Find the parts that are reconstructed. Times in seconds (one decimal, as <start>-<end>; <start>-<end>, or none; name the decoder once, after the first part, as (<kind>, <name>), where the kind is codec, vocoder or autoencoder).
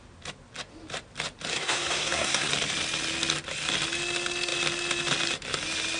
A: 1.5-2.5 (codec, SNAC)